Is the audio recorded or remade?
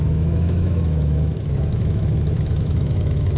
remade